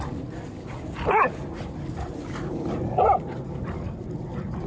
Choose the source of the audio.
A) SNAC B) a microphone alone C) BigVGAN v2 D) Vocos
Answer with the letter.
B